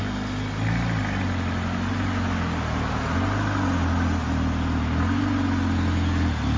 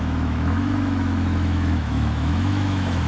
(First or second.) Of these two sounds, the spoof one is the second